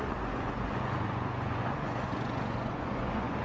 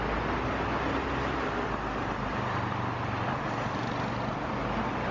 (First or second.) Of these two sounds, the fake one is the first